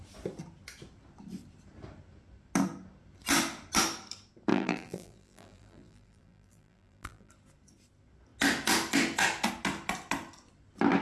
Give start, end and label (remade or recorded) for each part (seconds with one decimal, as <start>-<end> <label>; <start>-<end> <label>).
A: 0.0-4.5 recorded; 4.5-7.3 remade; 7.3-11.0 recorded

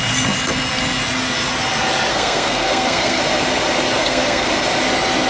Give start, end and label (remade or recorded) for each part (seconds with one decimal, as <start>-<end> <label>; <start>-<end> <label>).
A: 0.0-2.1 recorded; 2.1-3.2 remade; 3.2-4.0 recorded; 4.0-4.5 remade; 4.5-5.3 recorded

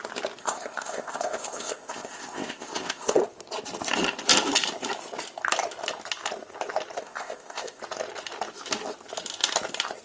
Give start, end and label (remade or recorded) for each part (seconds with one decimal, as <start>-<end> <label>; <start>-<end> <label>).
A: 0.0-0.4 recorded; 0.4-3.2 remade; 3.2-7.0 recorded; 7.0-7.8 remade; 7.8-10.0 recorded

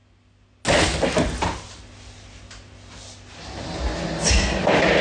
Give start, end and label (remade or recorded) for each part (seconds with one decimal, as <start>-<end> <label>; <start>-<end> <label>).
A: 0.0-5.0 recorded

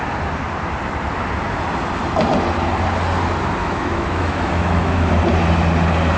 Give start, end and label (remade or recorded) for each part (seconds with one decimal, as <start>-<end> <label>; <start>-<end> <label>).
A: 0.0-3.6 recorded; 3.6-5.1 remade; 5.1-6.2 recorded

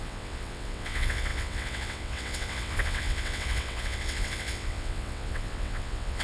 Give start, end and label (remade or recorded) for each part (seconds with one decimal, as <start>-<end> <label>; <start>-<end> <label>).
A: 0.0-6.2 remade